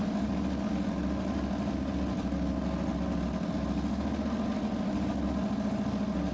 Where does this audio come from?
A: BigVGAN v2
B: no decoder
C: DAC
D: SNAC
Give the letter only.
B